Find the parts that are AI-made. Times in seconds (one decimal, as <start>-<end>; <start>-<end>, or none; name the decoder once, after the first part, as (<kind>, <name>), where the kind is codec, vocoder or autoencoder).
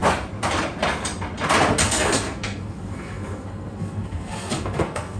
1.8-5.2 (codec, SNAC)